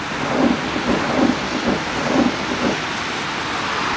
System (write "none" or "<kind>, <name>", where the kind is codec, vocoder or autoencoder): none